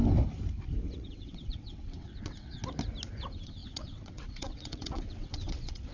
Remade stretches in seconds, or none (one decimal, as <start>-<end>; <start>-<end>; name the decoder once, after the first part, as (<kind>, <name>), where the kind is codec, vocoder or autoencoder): 0.9-2.6 (vocoder, WaveNeXt); 3.1-5.9